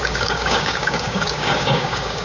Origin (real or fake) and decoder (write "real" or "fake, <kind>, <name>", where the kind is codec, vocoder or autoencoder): fake, codec, DAC